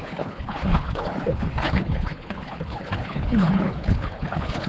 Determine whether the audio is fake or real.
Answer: fake